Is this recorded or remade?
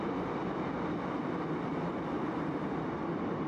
remade